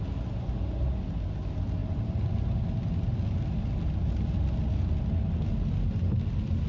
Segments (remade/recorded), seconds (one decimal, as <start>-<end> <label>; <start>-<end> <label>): 0.0-6.7 recorded